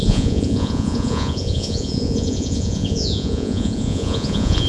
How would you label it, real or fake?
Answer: fake